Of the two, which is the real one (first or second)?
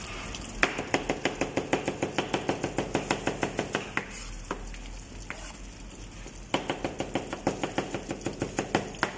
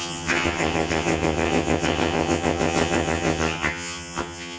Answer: first